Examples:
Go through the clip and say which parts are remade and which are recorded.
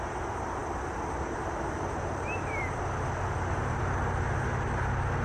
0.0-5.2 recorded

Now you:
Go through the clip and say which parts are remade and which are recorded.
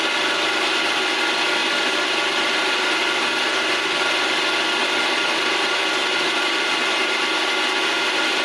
0.0-1.6 recorded; 1.6-3.0 remade; 3.0-4.8 recorded; 4.8-7.1 remade; 7.1-8.4 recorded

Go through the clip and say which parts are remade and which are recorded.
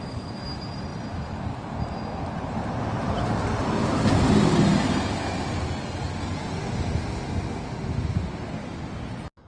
0.0-9.5 recorded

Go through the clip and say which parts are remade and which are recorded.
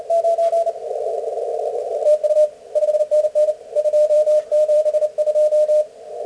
0.0-1.8 recorded; 1.8-5.0 remade; 5.0-6.3 recorded